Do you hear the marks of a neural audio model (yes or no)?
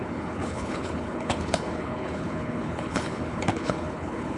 yes